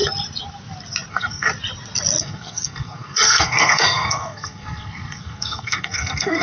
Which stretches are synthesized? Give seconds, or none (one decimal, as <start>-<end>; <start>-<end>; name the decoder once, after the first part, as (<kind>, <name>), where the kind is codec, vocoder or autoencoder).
1.1-1.5 (codec, SNAC); 2.2-6.4